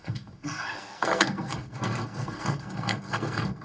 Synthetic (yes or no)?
yes